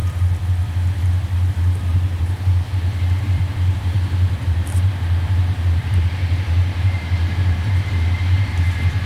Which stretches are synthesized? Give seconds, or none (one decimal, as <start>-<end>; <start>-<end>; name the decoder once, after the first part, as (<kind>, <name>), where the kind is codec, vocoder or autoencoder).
1.5-9.1 (vocoder, BigVGAN v2)